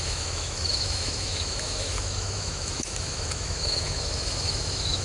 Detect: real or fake fake